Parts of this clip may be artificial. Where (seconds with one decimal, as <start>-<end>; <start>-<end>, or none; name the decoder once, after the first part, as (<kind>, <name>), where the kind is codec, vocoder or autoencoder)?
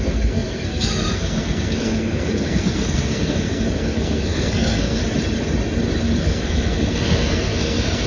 0.0-5.0 (codec, SNAC); 6.2-8.1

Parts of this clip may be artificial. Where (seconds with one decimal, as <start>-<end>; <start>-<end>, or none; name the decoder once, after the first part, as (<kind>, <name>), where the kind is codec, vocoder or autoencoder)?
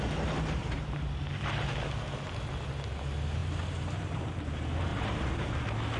0.6-1.2 (vocoder, BigVGAN v2); 3.4-4.4; 4.9-5.6